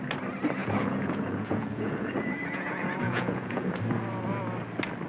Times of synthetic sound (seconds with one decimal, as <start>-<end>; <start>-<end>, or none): 0.6-3.7